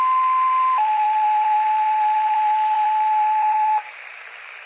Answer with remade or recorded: remade